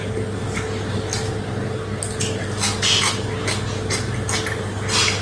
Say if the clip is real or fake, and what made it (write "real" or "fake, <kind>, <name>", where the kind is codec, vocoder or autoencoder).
real